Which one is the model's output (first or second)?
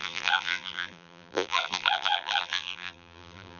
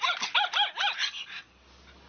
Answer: first